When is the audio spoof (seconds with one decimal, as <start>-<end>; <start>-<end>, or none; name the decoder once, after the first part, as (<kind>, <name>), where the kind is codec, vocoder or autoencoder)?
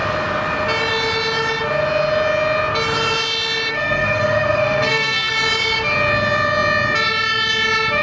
3.7-5.3 (codec, SNAC)